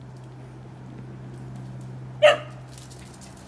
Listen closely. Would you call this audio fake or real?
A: real